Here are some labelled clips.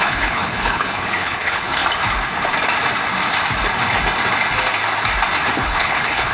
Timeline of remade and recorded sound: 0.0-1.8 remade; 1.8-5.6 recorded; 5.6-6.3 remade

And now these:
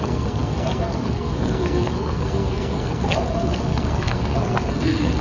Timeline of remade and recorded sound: 0.0-5.2 remade

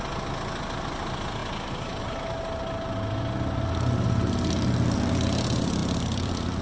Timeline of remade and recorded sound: 0.0-5.8 recorded; 5.8-6.6 remade

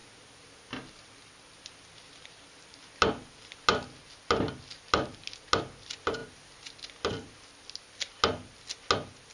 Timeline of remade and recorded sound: 0.0-9.3 recorded

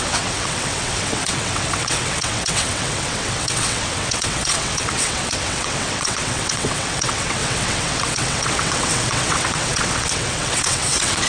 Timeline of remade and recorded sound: 0.0-11.3 remade